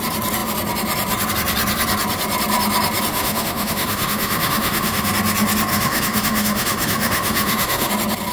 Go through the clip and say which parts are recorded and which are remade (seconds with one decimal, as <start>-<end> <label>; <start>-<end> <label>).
0.0-3.1 recorded; 3.1-5.1 remade; 5.1-5.7 recorded; 5.7-7.9 remade; 7.9-8.3 recorded